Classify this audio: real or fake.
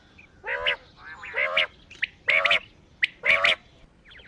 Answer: real